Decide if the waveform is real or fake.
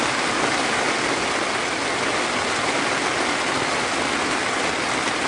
real